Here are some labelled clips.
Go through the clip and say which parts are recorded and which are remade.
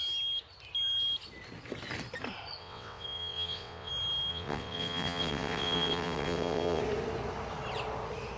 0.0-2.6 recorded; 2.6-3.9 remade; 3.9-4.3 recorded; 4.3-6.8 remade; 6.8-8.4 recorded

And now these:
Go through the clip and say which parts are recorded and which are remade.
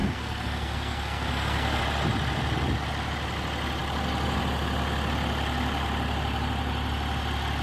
0.0-1.8 remade; 1.8-7.6 recorded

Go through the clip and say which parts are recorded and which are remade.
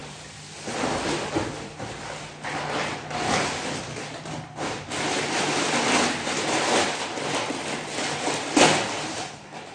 0.0-9.7 recorded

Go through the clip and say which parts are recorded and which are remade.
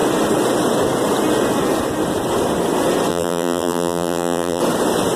0.0-3.1 recorded; 3.1-4.6 remade; 4.6-5.2 recorded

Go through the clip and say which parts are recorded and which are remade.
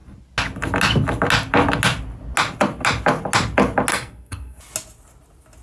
0.0-3.9 recorded; 3.9-4.6 remade; 4.6-5.6 recorded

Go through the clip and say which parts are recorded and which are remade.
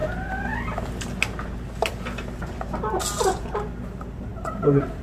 0.0-4.3 recorded; 4.3-5.0 remade